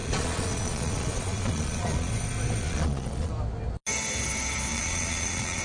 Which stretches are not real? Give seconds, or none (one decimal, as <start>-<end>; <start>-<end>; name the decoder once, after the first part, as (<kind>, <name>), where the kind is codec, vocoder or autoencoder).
0.0-2.1 (vocoder, Vocos); 2.6-3.3; 4.7-5.6